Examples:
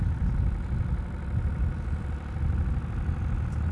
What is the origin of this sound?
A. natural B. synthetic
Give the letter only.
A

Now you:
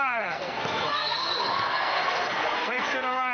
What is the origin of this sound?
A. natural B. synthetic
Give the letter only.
B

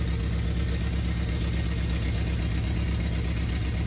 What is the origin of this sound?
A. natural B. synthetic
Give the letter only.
A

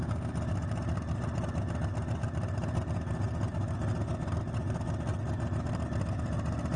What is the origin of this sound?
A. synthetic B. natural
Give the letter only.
B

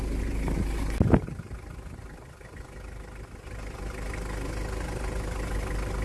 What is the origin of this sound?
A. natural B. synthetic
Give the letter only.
A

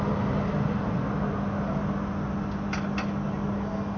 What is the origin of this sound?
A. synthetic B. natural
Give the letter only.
B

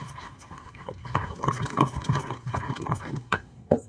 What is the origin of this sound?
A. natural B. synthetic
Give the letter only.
B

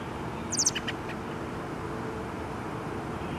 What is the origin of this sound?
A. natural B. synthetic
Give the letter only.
A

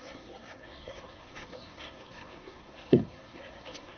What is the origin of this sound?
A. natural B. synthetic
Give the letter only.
B